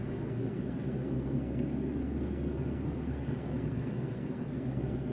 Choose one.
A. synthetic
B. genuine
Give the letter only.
A